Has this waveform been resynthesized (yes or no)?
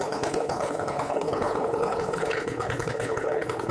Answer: yes